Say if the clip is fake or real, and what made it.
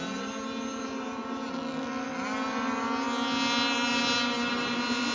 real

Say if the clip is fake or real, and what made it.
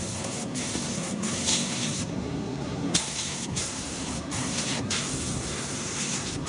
fake, codec, SNAC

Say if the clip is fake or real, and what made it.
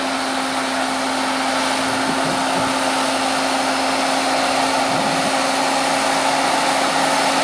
real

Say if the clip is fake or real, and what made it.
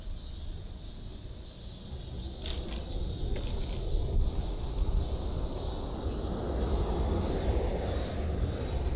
real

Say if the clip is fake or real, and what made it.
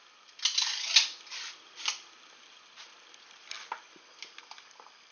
real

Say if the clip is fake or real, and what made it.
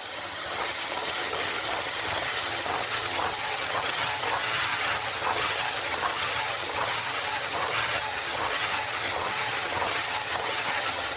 fake, vocoder, HiFi-GAN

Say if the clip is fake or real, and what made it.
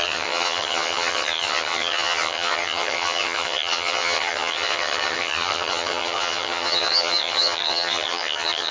fake, vocoder, HiFi-GAN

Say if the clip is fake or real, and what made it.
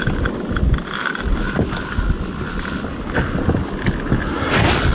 real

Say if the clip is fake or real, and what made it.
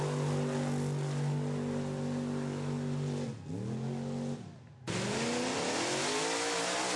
real